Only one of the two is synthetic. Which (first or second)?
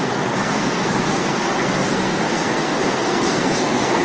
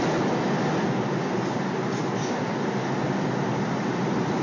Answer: first